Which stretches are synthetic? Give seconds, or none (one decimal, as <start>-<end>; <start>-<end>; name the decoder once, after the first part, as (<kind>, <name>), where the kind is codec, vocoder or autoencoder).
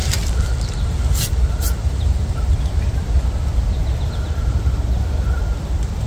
none